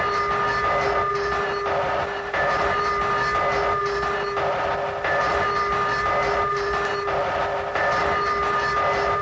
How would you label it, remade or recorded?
recorded